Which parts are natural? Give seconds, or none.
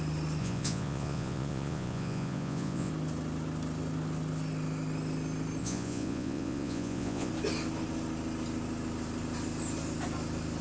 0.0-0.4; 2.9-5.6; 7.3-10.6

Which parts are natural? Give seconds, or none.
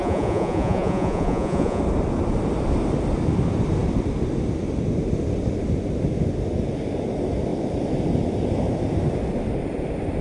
1.8-10.2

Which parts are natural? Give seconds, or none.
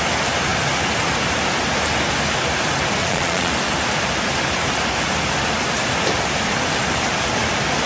0.0-3.0; 3.5-7.9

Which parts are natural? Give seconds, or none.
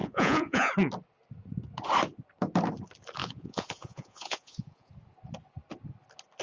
0.7-3.2; 4.9-6.4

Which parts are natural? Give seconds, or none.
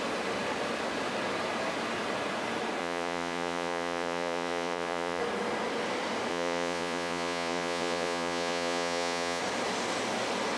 0.0-2.8; 5.2-6.3; 9.4-10.6